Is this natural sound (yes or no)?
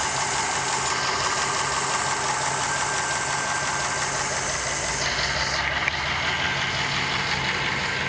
yes